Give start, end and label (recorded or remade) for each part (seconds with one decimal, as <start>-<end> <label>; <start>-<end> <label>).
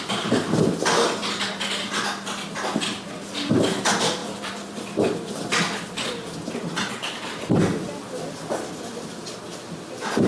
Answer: 0.0-1.2 recorded; 1.2-1.9 remade; 1.9-4.2 recorded; 4.2-8.7 remade; 8.7-10.3 recorded